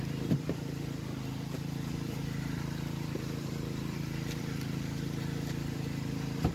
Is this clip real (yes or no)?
no